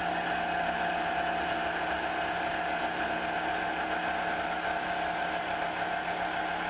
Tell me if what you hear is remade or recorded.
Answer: recorded